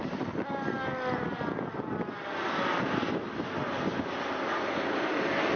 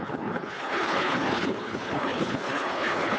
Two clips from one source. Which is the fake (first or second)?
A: second